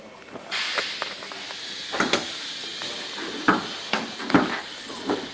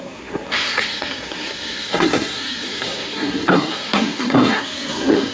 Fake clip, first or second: second